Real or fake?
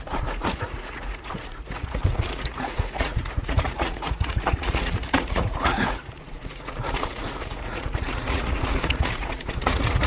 fake